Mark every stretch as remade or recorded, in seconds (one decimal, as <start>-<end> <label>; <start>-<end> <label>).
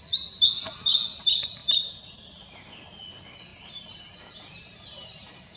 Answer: 0.0-1.6 recorded; 1.6-2.7 remade; 2.7-3.5 recorded; 3.5-5.6 remade